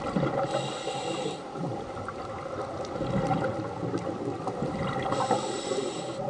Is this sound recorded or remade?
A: recorded